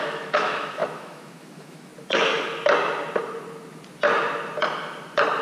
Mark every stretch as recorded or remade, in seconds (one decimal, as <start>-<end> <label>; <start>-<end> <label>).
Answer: 0.0-1.9 remade; 1.9-5.4 recorded